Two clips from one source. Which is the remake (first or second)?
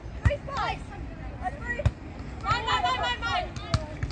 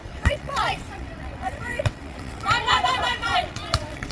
second